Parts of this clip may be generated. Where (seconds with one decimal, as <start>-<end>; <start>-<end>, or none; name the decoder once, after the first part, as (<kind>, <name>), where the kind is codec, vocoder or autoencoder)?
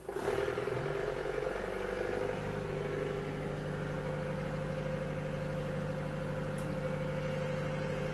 1.0-1.5 (vocoder, Vocos)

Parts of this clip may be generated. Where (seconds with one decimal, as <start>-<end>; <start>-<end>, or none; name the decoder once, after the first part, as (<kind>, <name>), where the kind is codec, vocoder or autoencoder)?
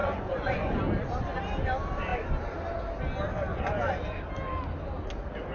0.0-0.8 (vocoder, Vocos); 3.5-4.2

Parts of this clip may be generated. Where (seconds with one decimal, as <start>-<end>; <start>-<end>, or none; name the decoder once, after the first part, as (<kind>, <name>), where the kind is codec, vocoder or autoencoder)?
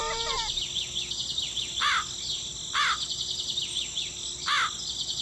none